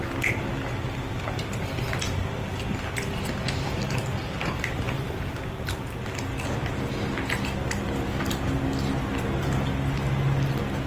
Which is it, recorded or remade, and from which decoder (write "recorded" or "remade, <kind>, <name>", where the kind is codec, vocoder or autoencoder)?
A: recorded